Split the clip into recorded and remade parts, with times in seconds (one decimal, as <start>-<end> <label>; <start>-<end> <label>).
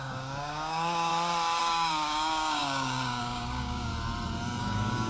0.0-1.1 remade; 1.1-1.6 recorded; 1.6-3.9 remade; 3.9-4.6 recorded; 4.6-5.1 remade